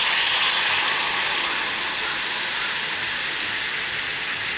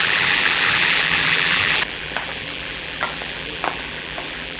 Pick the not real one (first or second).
second